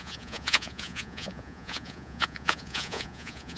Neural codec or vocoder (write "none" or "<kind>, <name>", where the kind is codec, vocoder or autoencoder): vocoder, Vocos